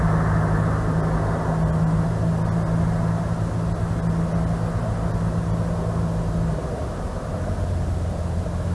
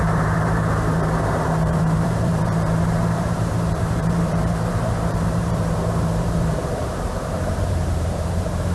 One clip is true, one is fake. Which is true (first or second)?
first